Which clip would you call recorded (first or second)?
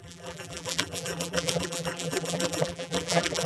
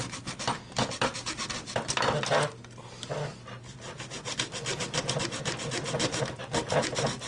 second